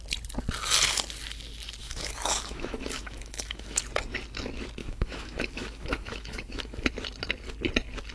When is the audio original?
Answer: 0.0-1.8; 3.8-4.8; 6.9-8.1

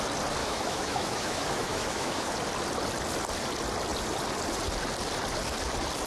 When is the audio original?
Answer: 0.0-0.4; 2.3-6.1

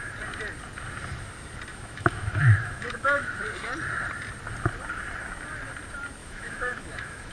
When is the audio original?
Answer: 0.0-1.7; 3.4-6.2